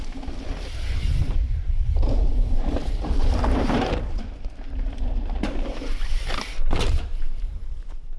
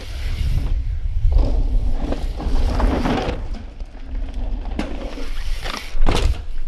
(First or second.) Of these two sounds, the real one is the second